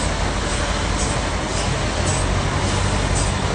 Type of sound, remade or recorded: recorded